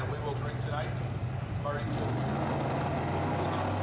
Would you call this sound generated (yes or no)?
no